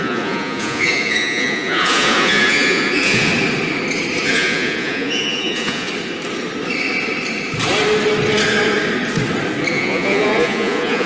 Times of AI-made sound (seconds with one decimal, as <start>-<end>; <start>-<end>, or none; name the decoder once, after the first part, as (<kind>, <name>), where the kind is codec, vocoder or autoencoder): 0.0-3.3 (vocoder, Vocos); 4.2-5.9; 9.7-11.1